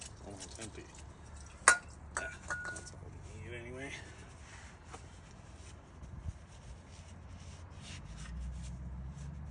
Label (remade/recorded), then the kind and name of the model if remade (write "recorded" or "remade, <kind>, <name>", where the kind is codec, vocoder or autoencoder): recorded